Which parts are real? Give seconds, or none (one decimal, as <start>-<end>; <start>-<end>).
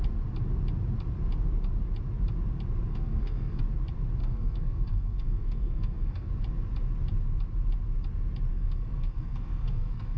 0.0-2.9; 3.6-4.2; 6.3-8.5